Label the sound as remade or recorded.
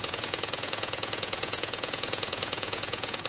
remade